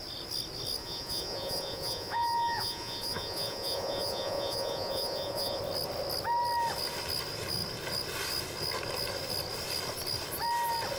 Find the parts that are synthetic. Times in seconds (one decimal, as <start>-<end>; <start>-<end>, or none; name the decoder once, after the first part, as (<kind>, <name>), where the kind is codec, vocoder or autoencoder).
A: 0.8-5.6 (vocoder, Vocos)